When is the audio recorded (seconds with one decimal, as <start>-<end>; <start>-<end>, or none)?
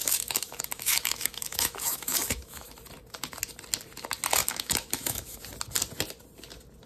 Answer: 2.7-4.4; 5.4-6.9